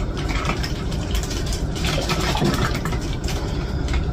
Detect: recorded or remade remade